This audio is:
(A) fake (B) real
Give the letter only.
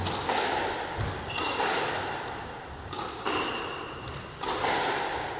B